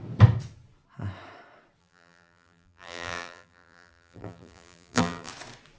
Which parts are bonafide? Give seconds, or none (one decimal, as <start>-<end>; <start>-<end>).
0.0-1.8; 5.3-5.8